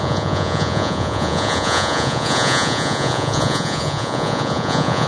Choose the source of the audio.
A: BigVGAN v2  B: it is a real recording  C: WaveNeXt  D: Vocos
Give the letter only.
D